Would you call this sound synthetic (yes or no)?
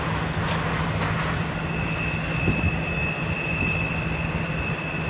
no